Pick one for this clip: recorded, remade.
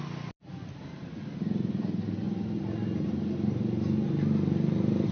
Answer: recorded